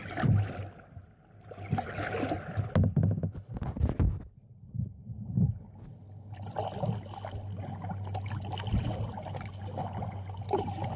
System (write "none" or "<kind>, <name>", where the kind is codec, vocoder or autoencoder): none